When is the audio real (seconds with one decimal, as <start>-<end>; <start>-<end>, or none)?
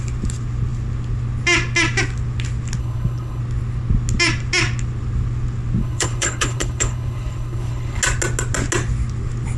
0.0-2.8; 3.4-5.8; 8.0-9.6